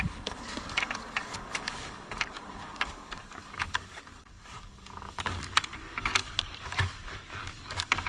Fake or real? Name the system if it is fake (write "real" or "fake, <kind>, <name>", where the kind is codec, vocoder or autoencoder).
fake, codec, DAC